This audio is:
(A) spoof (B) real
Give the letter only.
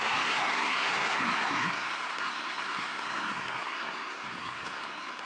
A